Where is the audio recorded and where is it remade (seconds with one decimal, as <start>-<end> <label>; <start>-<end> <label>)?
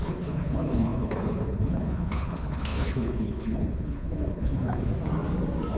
0.0-4.9 remade; 4.9-5.8 recorded